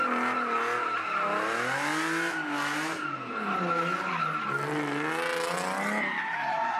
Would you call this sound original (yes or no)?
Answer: yes